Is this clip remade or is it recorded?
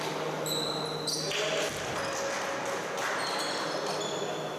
recorded